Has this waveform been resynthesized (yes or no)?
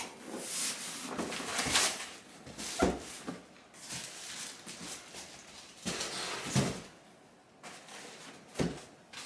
no